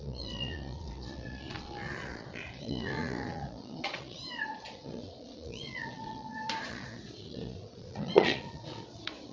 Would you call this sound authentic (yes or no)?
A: no